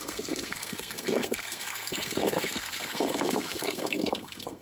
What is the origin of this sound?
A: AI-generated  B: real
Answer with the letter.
A